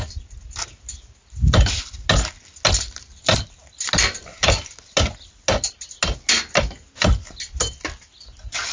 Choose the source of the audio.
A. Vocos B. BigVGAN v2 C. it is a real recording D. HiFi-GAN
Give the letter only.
C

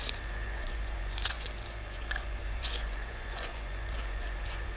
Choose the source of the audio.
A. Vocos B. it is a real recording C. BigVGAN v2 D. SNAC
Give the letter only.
A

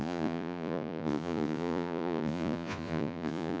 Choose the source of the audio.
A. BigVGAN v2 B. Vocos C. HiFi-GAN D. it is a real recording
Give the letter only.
B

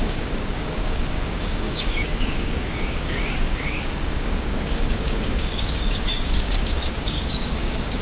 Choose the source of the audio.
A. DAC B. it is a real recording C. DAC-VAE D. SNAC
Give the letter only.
A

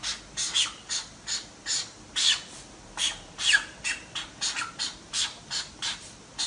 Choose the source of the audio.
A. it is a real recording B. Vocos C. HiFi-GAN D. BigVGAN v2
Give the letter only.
A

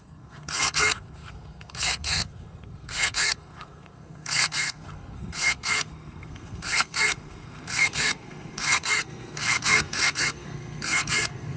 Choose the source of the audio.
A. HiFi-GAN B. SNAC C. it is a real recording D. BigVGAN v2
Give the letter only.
B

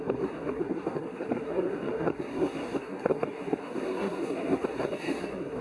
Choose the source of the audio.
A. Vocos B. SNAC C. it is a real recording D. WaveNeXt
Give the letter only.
B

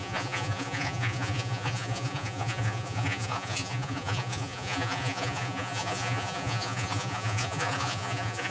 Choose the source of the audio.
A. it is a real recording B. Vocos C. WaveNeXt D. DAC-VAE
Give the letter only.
B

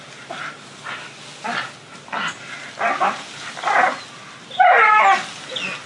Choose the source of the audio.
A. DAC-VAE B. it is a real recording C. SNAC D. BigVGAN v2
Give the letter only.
B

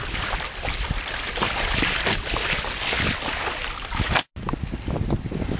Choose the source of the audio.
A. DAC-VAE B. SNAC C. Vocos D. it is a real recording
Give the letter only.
D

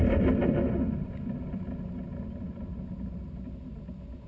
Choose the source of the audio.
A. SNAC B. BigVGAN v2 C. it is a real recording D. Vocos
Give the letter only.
C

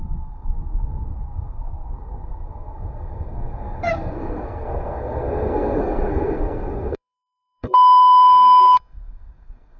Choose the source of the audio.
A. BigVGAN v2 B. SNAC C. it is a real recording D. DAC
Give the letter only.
B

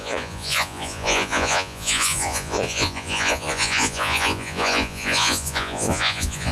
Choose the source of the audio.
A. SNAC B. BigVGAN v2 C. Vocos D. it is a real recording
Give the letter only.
C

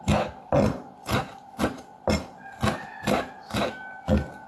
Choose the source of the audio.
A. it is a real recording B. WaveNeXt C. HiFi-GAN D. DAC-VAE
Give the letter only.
A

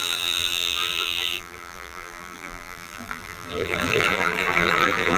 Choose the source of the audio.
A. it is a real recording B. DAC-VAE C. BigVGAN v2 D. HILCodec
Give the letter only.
C